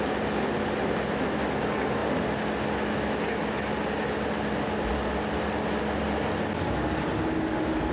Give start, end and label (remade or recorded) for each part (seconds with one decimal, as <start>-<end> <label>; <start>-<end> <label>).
0.0-7.9 recorded